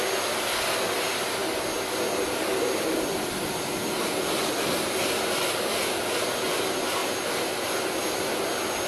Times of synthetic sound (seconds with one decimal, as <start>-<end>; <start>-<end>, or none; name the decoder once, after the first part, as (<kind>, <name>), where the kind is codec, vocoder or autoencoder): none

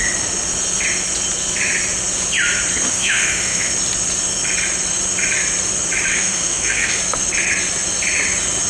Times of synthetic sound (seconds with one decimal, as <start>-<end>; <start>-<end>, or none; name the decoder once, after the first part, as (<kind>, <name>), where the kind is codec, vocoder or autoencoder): 2.9-3.7 (autoencoder, DAC-VAE); 6.1-7.0

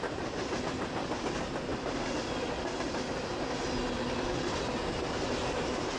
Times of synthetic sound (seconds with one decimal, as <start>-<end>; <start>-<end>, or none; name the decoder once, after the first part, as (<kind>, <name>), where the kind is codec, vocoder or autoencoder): none

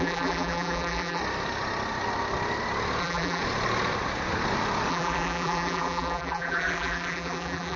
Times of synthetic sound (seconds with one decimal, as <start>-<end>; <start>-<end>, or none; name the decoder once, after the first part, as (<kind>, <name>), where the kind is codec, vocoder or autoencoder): 0.0-1.2 (vocoder, BigVGAN v2); 3.0-3.4; 4.9-7.8

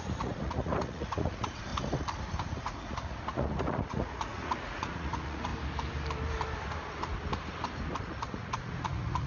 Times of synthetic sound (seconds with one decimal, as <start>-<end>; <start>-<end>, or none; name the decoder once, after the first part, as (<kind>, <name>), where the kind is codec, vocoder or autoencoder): 0.0-1.7 (vocoder, Vocos); 2.5-5.5; 8.0-9.3